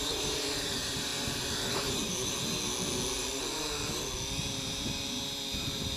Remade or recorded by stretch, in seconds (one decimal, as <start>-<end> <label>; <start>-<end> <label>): 0.0-1.1 remade; 1.1-1.7 recorded; 1.7-2.1 remade; 2.1-4.4 recorded; 4.4-6.0 remade